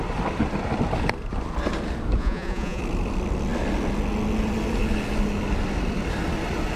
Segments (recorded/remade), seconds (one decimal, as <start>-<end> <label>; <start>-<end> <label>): 0.0-2.2 recorded; 2.2-2.8 remade; 2.8-6.8 recorded